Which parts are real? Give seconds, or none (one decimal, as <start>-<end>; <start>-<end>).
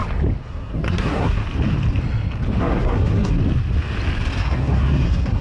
0.0-0.5; 1.4-2.6; 3.4-4.4